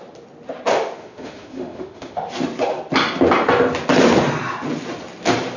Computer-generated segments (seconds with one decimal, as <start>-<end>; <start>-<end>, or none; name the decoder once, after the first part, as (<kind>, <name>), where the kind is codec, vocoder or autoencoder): 0.7-2.3 (autoencoder, DAC-VAE)